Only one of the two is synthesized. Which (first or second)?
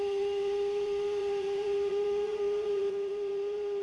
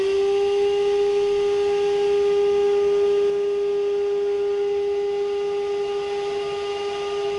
first